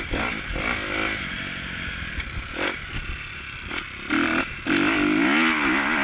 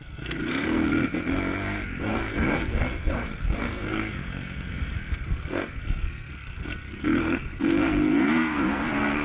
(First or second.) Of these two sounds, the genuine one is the first